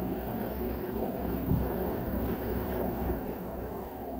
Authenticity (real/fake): fake